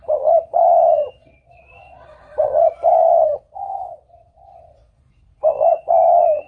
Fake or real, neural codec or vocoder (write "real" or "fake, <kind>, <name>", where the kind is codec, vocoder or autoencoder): fake, vocoder, Vocos